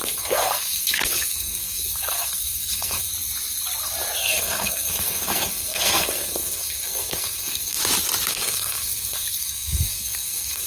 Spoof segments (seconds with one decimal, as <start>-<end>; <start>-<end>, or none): 0.0-3.1; 4.2-7.8; 8.3-10.7